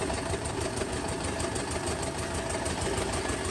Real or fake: real